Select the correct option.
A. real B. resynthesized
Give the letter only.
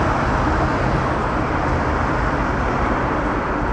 B